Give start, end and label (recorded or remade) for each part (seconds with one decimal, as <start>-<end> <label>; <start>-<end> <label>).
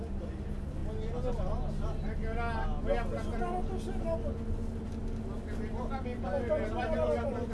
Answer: 0.0-0.8 remade; 0.8-4.0 recorded; 4.0-5.0 remade; 5.0-6.0 recorded; 6.0-7.5 remade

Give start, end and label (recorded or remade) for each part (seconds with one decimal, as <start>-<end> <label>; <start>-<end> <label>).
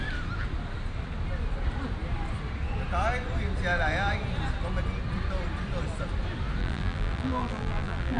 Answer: 0.0-6.6 recorded; 6.6-8.2 remade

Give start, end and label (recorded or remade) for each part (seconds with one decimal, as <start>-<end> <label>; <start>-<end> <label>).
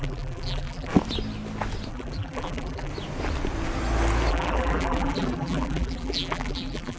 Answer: 0.0-0.9 remade; 0.9-1.9 recorded; 1.9-2.9 remade; 2.9-4.3 recorded; 4.3-7.0 remade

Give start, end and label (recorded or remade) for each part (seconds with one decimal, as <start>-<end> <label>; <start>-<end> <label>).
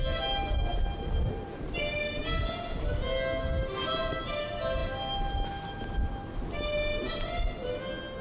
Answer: 0.0-8.2 recorded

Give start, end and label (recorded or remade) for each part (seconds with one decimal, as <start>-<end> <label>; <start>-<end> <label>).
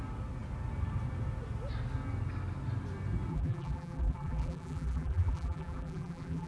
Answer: 0.0-3.3 recorded; 3.3-6.5 remade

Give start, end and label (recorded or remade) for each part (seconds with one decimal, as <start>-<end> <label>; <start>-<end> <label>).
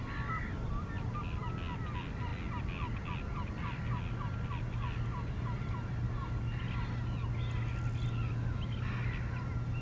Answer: 0.0-9.8 recorded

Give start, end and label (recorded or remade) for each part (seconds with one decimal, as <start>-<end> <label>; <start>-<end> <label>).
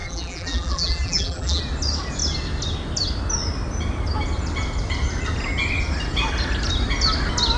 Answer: 0.0-1.6 remade; 1.6-7.6 recorded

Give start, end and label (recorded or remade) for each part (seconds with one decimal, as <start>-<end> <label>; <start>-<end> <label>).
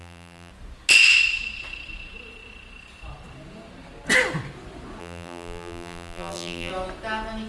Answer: 0.0-0.5 remade; 0.5-5.0 recorded; 5.0-6.7 remade; 6.7-7.5 recorded